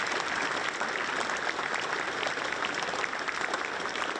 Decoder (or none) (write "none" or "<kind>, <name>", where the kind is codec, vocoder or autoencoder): vocoder, BigVGAN v2